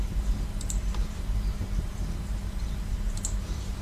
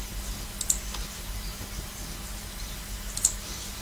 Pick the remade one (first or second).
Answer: first